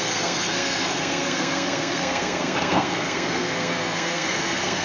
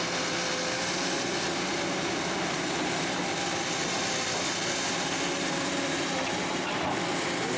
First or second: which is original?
second